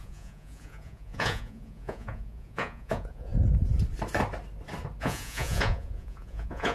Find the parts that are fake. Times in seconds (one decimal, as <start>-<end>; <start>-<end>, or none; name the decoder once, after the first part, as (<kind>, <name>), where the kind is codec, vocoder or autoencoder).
0.0-3.3 (vocoder, Vocos); 5.0-6.7